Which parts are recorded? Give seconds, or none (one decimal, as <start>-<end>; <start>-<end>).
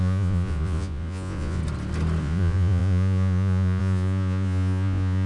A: 1.6-2.2